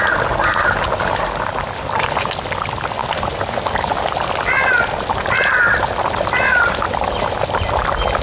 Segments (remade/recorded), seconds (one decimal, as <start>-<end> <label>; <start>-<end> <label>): 0.0-3.0 recorded; 3.0-3.9 remade; 3.9-8.2 recorded